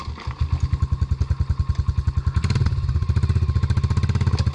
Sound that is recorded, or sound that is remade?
recorded